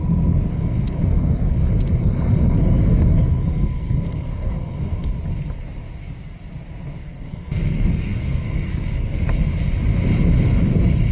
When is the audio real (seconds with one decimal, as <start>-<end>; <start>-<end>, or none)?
0.0-0.5; 5.1-7.0; 9.3-11.1